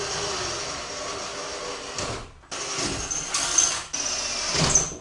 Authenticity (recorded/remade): recorded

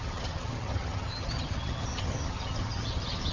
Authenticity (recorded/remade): remade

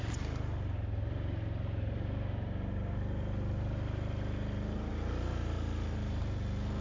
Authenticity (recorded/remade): recorded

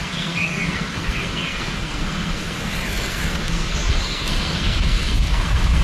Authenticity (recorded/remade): remade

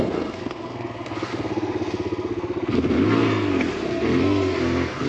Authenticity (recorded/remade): remade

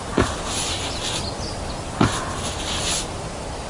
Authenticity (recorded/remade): recorded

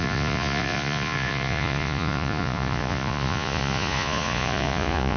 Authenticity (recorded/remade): remade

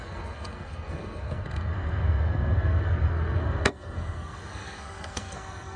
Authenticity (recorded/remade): remade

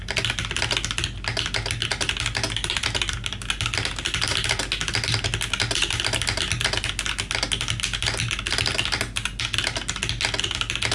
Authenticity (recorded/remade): recorded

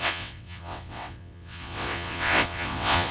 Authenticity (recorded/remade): remade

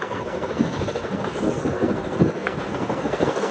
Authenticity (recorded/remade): remade